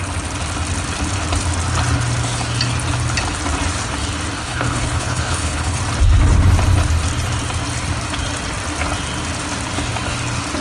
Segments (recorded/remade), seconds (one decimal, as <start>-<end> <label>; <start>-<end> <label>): 0.0-4.4 recorded; 4.4-5.8 remade; 5.8-10.6 recorded

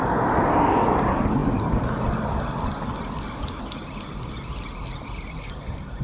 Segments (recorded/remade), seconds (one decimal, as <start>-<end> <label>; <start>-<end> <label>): 0.0-6.0 recorded